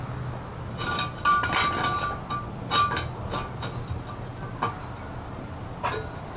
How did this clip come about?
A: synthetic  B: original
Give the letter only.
B